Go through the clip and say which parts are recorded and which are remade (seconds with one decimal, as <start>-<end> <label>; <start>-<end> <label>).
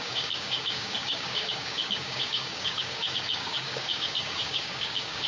0.0-5.3 remade